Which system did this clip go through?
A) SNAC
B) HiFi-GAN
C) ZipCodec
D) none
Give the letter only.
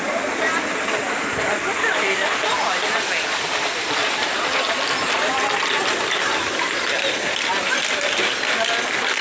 D